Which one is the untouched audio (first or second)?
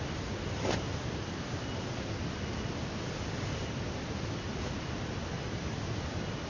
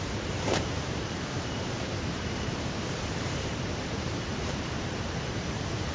first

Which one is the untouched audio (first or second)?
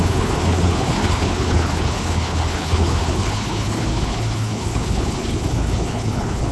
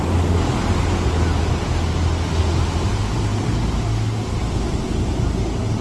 second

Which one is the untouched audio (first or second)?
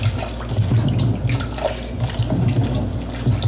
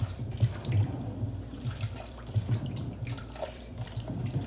first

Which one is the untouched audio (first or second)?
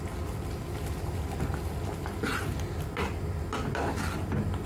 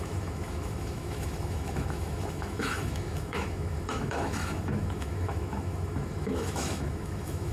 first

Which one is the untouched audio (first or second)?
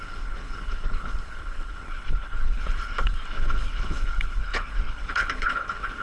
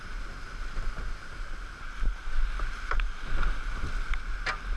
second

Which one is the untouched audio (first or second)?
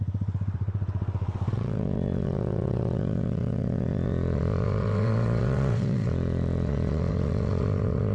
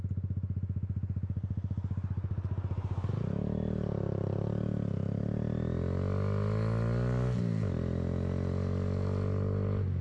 second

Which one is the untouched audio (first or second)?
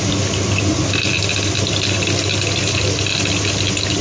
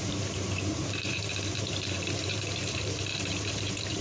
first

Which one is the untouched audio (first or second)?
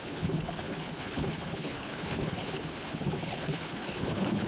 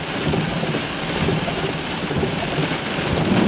second